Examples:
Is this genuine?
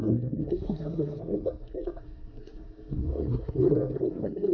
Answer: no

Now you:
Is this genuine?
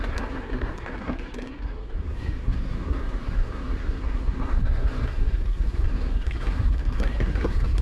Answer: no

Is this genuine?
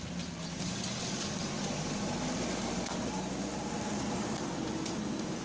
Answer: yes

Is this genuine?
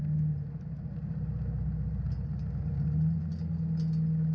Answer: yes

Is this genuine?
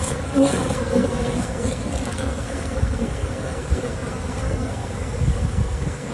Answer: no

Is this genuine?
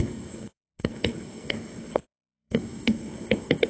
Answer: no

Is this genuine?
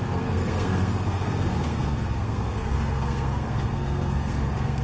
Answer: no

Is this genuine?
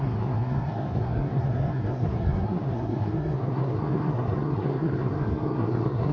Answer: no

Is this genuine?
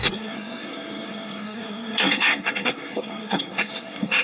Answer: no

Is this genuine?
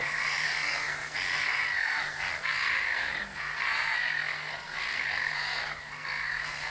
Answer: no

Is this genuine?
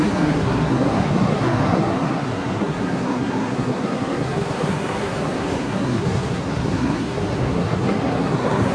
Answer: no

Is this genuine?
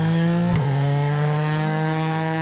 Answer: no